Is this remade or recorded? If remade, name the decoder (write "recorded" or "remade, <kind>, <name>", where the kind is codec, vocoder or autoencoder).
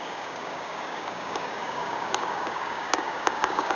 remade, codec, DAC